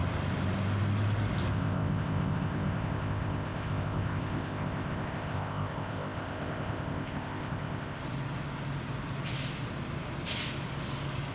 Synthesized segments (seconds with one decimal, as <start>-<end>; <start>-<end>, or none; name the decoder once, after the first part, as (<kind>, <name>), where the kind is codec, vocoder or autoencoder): 1.5-8.0 (codec, ZipCodec)